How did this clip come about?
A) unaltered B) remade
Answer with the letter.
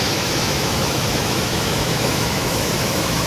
B